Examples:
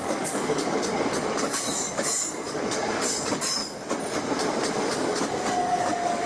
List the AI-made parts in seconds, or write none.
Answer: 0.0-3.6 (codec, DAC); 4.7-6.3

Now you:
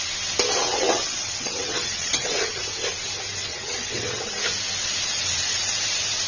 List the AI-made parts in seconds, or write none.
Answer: 0.6-2.6 (vocoder, WaveNeXt); 3.4-4.3

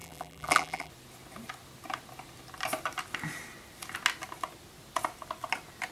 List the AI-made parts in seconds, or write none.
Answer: 0.0-0.9 (vocoder, BigVGAN v2)

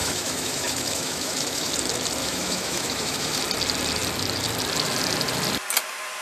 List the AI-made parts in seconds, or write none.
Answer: 0.0-1.7 (autoencoder, DAC-VAE); 2.2-3.4

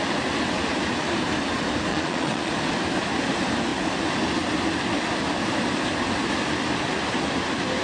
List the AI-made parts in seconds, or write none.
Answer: 1.9-2.5 (vocoder, Vocos)

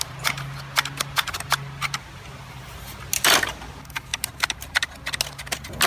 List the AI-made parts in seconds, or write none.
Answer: none

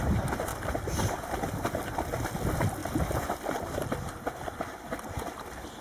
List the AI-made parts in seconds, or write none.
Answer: 0.5-2.2 (vocoder, BigVGAN v2); 2.8-5.8